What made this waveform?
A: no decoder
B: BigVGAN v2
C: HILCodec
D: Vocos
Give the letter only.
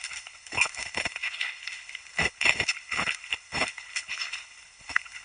C